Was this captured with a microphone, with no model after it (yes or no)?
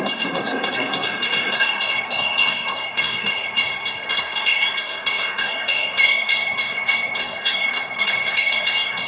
no